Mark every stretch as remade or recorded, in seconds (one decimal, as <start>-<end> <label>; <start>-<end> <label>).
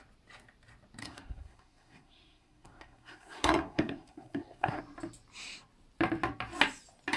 0.0-1.0 recorded; 1.0-4.8 remade; 4.8-7.2 recorded